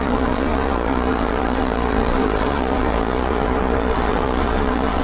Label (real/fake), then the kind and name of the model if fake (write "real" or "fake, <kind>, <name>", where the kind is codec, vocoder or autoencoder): fake, vocoder, Vocos